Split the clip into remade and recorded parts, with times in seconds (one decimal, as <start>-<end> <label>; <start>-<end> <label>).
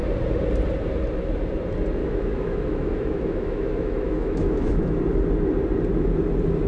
0.0-2.0 recorded; 2.0-5.0 remade; 5.0-6.7 recorded